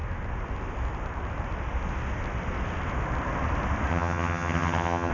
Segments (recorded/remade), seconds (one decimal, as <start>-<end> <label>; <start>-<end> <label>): 0.0-3.9 recorded; 3.9-5.1 remade